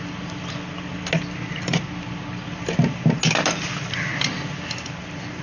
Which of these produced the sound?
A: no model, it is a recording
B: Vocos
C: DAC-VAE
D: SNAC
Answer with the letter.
A